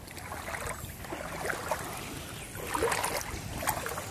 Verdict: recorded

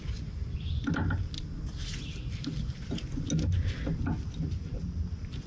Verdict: recorded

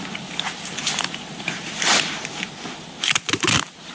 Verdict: recorded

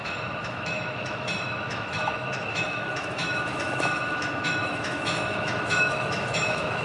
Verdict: remade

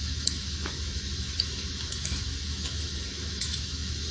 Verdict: remade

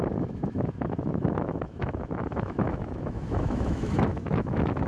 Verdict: remade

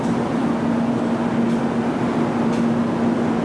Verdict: recorded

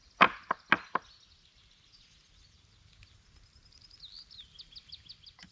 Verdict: recorded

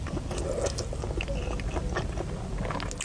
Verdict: recorded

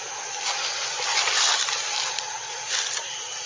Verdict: recorded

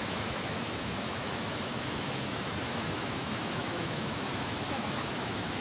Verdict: remade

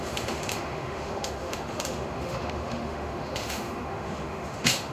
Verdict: remade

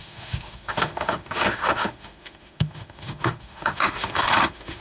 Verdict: remade